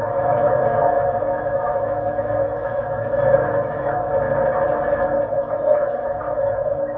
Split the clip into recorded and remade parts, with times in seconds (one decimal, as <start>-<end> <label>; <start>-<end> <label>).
0.0-4.1 remade; 4.1-5.3 recorded; 5.3-7.0 remade